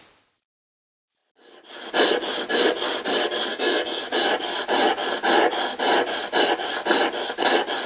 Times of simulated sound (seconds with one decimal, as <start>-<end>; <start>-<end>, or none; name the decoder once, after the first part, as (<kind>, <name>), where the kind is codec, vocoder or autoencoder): 3.5-4.0 (autoencoder, DAC-VAE)